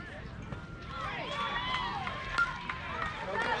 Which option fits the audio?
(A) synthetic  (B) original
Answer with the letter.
B